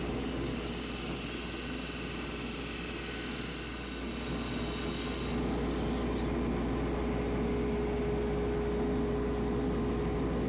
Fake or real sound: real